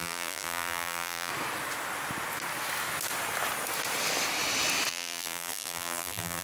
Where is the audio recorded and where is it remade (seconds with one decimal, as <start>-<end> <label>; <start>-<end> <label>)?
0.0-1.3 remade; 1.3-4.9 recorded; 4.9-6.4 remade

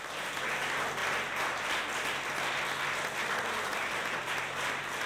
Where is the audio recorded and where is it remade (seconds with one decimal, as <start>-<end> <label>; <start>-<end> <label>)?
0.0-3.7 recorded; 3.7-5.1 remade

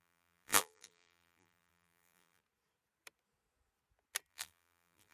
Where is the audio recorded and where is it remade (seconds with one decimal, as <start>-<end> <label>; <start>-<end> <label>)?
0.0-2.4 remade; 2.4-4.3 recorded; 4.3-5.1 remade

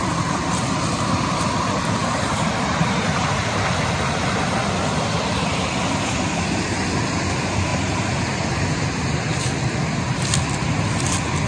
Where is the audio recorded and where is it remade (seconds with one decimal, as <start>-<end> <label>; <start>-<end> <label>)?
0.0-2.0 recorded; 2.0-3.7 remade; 3.7-7.7 recorded; 7.7-8.2 remade; 8.2-11.5 recorded

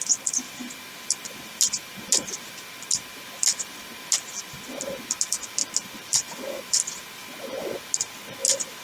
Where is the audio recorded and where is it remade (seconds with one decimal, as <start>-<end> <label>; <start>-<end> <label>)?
0.0-8.8 recorded

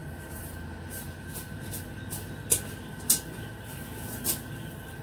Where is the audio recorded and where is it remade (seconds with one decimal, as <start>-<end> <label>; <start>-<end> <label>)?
0.0-0.5 remade; 0.5-0.9 recorded; 0.9-1.7 remade; 1.7-5.0 recorded

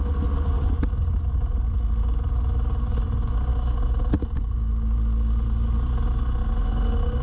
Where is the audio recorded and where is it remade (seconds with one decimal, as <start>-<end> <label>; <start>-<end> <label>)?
0.0-7.2 recorded

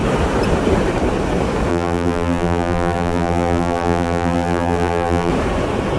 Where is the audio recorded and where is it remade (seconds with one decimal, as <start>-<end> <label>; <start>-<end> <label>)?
0.0-1.7 recorded; 1.7-5.3 remade; 5.3-6.0 recorded